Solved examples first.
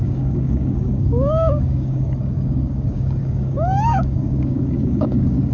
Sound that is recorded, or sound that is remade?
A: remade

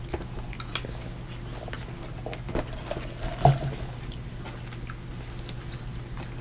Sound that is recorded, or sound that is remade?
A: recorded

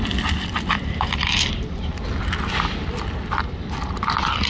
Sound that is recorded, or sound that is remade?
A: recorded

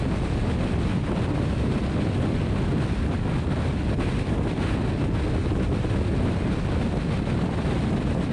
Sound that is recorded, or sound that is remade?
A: recorded